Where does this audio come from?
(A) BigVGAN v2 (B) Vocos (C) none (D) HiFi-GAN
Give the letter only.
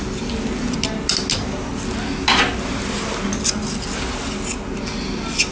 C